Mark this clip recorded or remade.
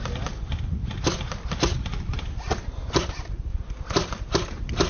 recorded